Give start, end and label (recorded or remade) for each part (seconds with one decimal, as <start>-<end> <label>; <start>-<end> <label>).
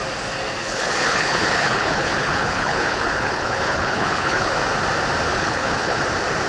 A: 0.0-0.6 recorded; 0.6-4.5 remade; 4.5-5.3 recorded; 5.3-6.0 remade; 6.0-6.5 recorded